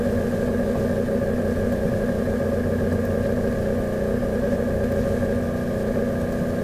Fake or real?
real